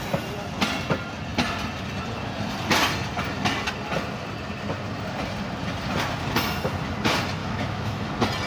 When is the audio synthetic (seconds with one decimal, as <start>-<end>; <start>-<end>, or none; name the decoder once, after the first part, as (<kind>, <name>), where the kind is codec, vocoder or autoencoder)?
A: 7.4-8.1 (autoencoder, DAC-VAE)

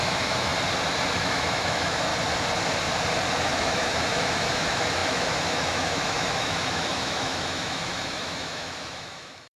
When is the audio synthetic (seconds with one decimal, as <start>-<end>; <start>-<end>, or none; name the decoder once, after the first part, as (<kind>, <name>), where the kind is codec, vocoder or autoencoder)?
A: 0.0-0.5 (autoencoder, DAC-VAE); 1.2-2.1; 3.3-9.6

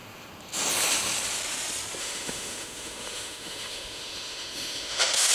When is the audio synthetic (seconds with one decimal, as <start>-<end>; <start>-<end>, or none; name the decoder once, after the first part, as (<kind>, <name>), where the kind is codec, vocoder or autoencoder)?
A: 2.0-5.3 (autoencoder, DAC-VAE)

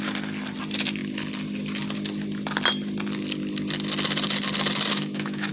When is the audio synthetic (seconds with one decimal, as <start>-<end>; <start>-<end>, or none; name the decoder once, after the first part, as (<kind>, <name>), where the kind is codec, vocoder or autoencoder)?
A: 4.9-5.5 (autoencoder, DAC-VAE)